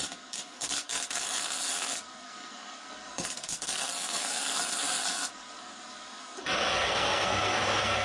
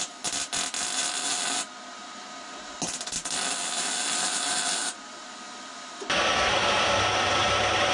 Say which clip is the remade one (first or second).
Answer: first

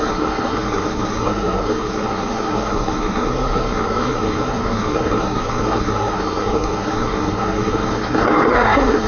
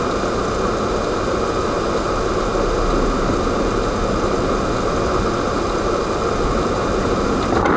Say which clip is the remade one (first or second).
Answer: first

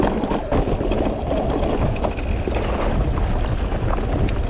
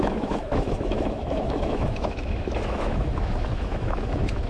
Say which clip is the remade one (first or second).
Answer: second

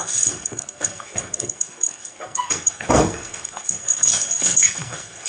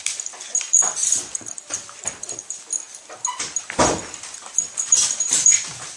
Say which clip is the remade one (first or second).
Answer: first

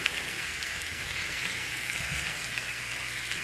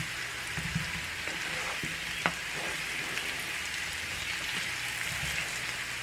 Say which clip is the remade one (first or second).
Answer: first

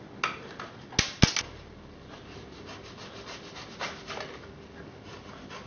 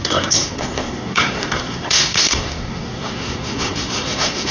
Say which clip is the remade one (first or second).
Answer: second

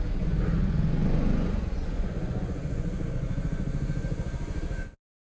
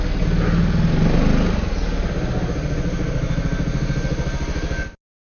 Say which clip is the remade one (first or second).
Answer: first